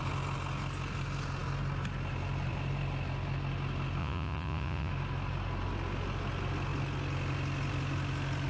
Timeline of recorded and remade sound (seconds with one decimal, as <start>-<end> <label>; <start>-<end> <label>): 0.0-4.0 recorded; 4.0-4.9 remade; 4.9-8.5 recorded